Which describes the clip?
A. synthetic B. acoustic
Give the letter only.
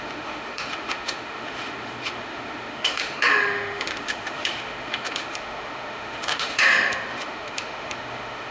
A